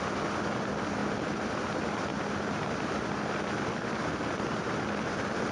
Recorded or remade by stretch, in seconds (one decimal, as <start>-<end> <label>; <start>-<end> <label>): 0.0-5.5 recorded